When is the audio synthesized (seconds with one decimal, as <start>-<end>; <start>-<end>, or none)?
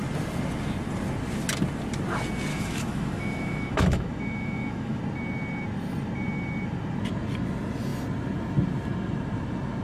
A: 2.5-5.0